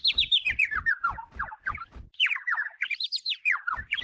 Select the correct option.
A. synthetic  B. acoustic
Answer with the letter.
B